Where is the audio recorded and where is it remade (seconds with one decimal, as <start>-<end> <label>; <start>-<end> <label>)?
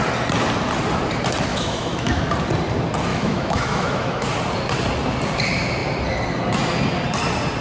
0.0-1.5 recorded; 1.5-2.2 remade; 2.2-3.1 recorded; 3.1-4.3 remade; 4.3-7.6 recorded